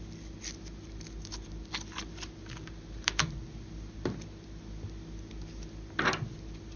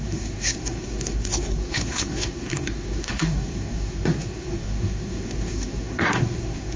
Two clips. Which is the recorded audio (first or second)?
first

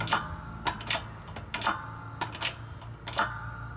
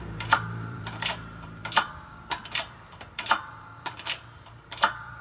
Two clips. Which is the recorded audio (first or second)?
first